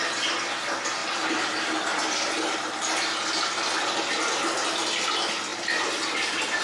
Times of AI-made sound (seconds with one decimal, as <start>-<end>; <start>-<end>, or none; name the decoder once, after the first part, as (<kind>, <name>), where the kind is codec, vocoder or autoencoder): none